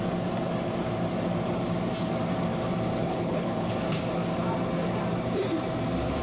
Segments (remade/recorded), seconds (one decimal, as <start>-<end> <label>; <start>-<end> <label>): 0.0-3.0 recorded; 3.0-3.7 remade; 3.7-6.2 recorded